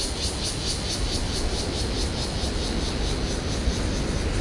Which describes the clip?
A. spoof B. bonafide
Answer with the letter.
B